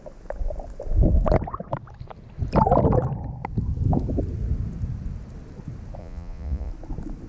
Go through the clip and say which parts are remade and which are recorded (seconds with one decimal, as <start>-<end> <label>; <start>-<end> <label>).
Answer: 0.0-6.0 recorded; 6.0-6.7 remade; 6.7-7.3 recorded